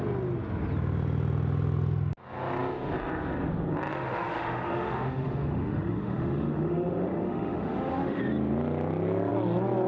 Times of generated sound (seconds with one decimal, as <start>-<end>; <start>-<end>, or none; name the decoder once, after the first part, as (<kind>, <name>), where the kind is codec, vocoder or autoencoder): 3.9-8.2 (autoencoder, DAC-VAE)